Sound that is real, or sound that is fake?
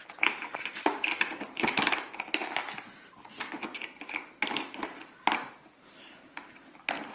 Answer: real